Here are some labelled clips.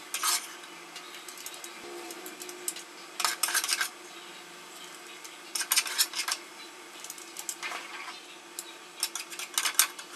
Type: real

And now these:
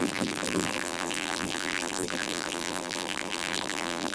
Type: fake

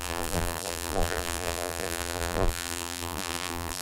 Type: fake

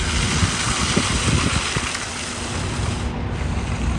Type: real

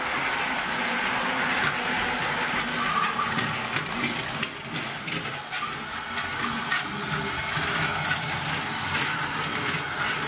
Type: real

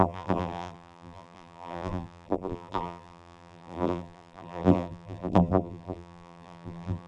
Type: fake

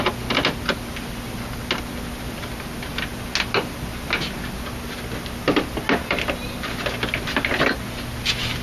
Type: real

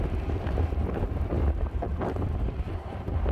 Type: real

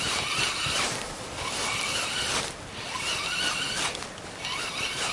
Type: real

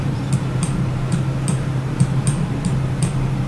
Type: fake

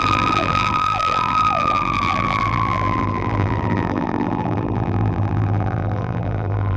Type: fake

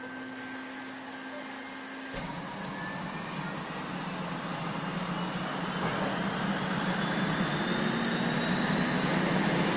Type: real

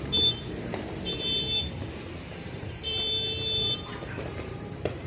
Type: fake